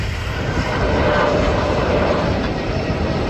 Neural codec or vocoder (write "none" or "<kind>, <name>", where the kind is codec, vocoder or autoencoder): vocoder, BigVGAN v2